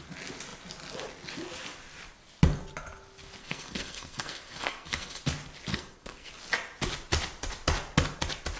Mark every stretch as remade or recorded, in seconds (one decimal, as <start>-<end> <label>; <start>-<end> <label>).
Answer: 0.0-3.4 recorded; 3.4-5.2 remade; 5.2-5.7 recorded; 5.7-6.3 remade; 6.3-8.6 recorded